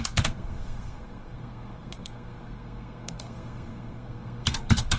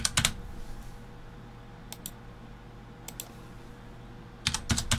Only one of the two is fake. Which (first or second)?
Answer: first